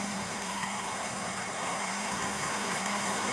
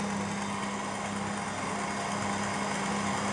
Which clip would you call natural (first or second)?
second